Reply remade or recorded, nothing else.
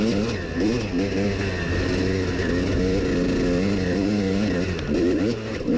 recorded